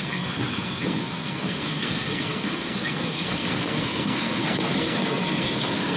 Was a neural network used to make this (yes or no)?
yes